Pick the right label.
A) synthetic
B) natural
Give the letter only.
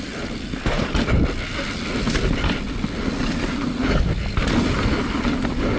B